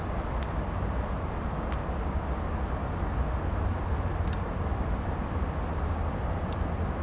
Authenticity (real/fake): real